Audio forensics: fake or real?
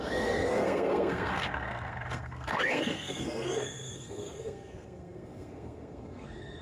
fake